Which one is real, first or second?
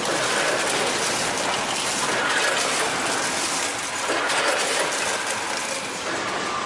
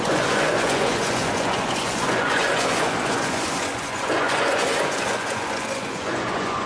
first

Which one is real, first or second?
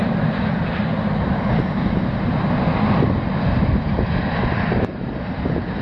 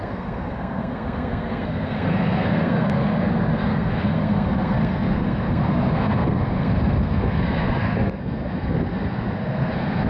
first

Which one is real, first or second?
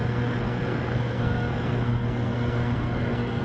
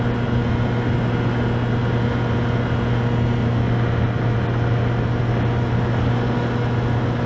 second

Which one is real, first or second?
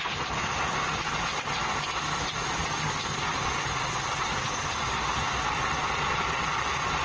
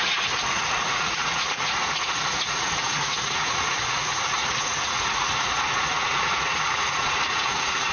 first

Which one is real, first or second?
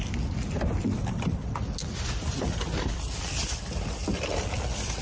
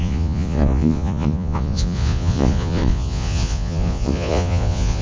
first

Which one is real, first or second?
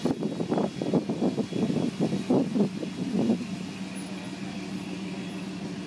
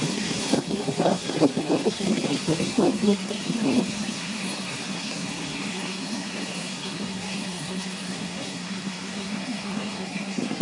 first